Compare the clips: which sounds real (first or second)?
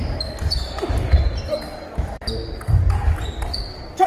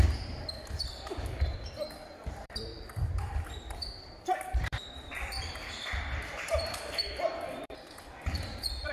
first